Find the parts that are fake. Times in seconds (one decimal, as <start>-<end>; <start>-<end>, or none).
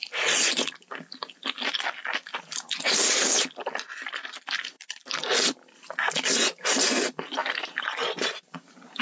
none